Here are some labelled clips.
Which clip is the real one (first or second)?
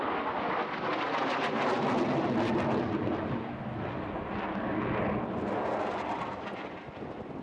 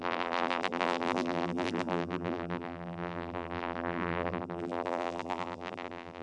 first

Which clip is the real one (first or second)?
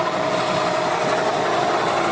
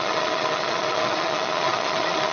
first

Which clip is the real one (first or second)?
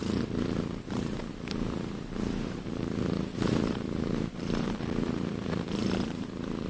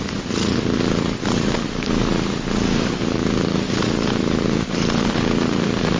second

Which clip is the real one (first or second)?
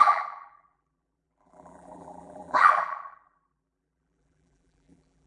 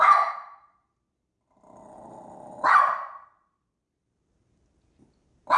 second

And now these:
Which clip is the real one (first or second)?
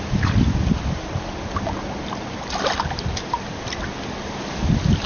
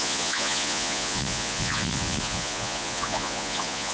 first